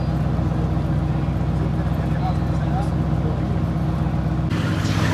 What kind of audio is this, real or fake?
real